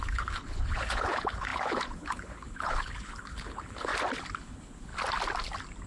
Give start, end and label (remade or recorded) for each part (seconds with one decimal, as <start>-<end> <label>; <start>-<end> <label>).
0.0-3.9 remade; 3.9-4.4 recorded; 4.4-4.9 remade; 4.9-5.9 recorded